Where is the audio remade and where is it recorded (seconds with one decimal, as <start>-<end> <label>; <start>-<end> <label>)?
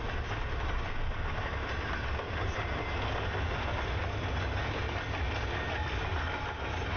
0.0-7.0 recorded